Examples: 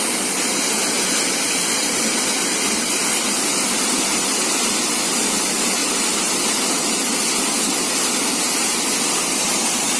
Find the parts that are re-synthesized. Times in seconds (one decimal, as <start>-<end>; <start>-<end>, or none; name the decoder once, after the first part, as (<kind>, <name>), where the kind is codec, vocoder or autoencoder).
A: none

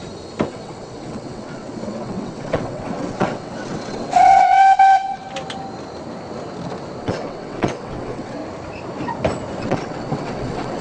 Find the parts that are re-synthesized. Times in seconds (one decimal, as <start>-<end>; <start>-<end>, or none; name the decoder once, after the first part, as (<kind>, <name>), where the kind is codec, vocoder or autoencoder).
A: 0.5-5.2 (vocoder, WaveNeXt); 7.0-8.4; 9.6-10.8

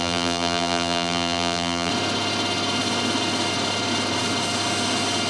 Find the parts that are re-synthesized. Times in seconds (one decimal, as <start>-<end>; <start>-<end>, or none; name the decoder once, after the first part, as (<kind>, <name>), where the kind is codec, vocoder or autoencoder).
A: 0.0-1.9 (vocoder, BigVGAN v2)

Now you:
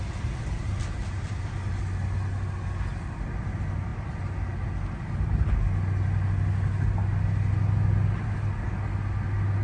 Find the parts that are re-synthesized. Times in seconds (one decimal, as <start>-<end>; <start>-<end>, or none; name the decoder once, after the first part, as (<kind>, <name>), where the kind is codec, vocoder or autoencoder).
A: none

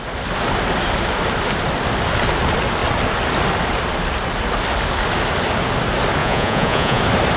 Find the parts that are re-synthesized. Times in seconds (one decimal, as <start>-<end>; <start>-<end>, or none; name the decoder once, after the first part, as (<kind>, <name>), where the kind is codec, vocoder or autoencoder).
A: 6.2-7.0 (vocoder, Vocos)

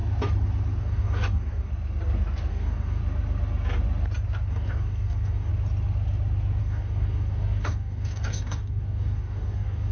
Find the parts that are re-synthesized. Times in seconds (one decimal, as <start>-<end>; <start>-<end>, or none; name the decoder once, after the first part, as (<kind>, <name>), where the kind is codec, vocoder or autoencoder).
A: 0.8-1.7 (codec, DAC); 2.5-3.0; 4.5-5.5; 6.6-9.9

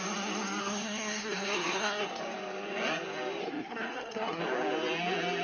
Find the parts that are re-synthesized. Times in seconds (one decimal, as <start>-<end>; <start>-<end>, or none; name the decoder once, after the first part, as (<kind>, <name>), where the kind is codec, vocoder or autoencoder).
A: 0.6-2.2 (codec, SNAC); 3.4-4.4